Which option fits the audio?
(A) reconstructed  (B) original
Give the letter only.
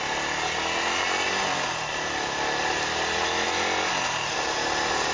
B